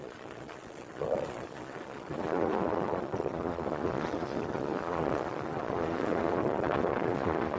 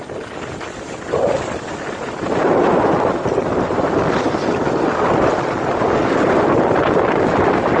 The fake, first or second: first